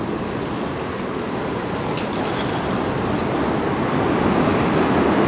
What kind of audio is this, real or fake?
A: real